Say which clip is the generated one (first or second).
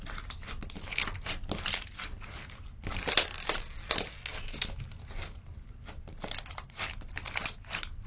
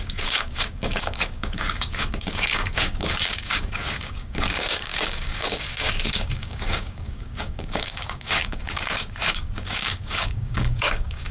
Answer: second